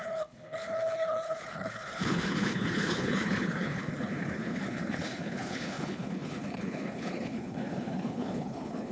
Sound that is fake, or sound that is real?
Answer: fake